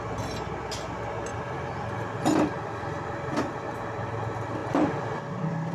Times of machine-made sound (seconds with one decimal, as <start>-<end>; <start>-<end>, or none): 1.3-3.6